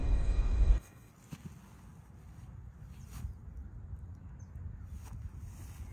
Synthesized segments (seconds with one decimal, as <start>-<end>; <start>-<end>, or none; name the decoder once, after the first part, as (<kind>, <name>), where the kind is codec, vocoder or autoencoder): 0.0-1.1 (codec, DAC)